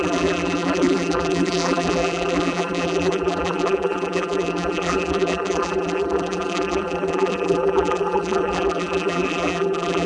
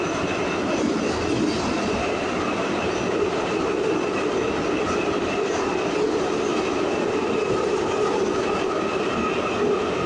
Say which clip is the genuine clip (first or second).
second